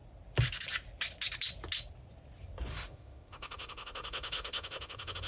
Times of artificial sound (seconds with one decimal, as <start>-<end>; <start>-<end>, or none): 2.7-5.3